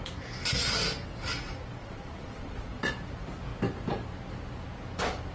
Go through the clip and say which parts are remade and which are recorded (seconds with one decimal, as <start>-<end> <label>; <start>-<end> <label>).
0.0-1.8 recorded; 1.8-2.9 remade; 2.9-5.3 recorded